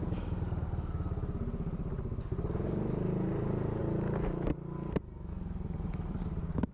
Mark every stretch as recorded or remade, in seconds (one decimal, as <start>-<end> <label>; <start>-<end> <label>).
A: 0.0-6.7 recorded